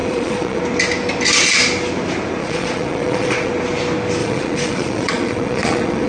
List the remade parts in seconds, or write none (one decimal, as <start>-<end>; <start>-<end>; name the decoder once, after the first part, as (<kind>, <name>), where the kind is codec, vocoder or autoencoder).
0.0-0.6 (vocoder, Vocos); 2.4-3.5; 4.2-6.1

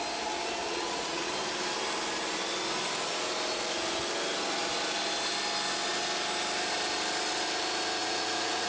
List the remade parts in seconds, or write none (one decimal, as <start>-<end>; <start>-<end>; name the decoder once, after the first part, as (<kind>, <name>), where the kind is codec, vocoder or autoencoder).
0.6-1.3 (vocoder, Vocos); 8.0-8.7

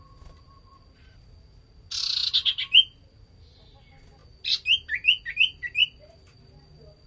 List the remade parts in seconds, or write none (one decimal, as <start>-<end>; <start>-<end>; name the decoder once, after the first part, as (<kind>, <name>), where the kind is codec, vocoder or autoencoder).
none

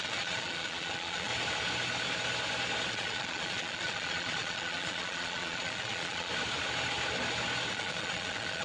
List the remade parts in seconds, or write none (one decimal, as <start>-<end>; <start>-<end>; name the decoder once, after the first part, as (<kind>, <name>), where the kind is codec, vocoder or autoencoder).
0.0-1.3 (vocoder, Vocos); 2.9-6.3; 7.7-8.6

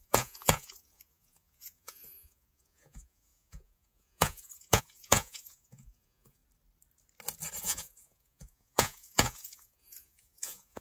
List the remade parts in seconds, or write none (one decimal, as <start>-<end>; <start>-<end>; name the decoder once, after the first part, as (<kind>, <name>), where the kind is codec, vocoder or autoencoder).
0.0-6.4 (vocoder, Vocos); 7.6-10.8

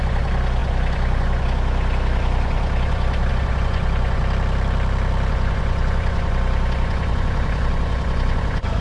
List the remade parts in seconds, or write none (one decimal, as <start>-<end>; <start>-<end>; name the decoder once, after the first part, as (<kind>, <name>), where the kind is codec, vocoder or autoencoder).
0.0-4.2 (vocoder, Vocos); 5.3-8.8